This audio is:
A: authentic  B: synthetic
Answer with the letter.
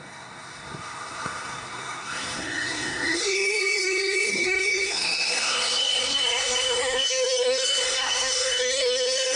B